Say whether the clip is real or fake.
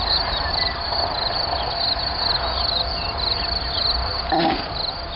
real